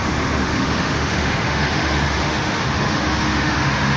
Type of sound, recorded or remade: remade